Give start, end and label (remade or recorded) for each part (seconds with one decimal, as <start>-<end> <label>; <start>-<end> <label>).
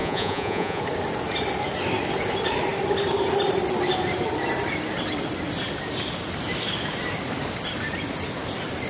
0.0-0.8 remade; 0.8-8.9 recorded